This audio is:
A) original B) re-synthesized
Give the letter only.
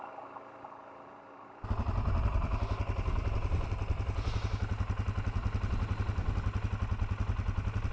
A